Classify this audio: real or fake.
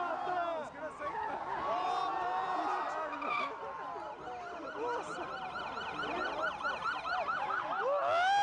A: real